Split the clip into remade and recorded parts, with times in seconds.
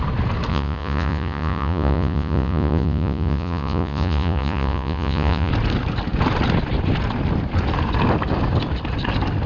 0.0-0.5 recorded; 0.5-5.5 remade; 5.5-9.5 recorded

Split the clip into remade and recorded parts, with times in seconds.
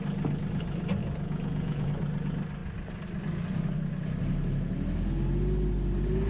0.0-1.0 recorded; 1.0-1.9 remade; 1.9-6.3 recorded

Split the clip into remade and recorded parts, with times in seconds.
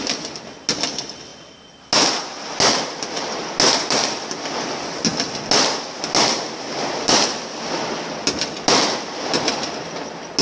0.0-10.4 recorded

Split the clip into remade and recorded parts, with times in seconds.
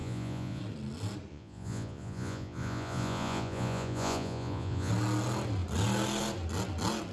0.0-0.6 remade; 0.6-1.3 recorded; 1.3-4.9 remade; 4.9-7.1 recorded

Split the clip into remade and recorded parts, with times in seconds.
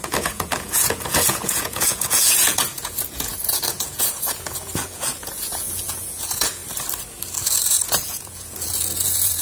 0.0-6.6 remade; 6.6-7.4 recorded; 7.4-9.4 remade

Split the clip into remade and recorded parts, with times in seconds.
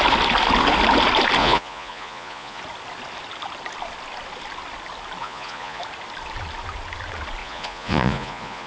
0.0-1.4 recorded; 1.4-2.6 remade; 2.6-5.2 recorded; 5.2-5.8 remade; 5.8-7.4 recorded; 7.4-8.7 remade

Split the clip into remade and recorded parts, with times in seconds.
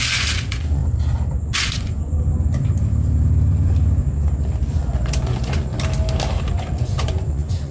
0.0-0.8 remade; 0.8-1.4 recorded; 1.4-2.2 remade; 2.2-4.7 recorded; 4.7-5.7 remade; 5.7-6.5 recorded; 6.5-7.7 remade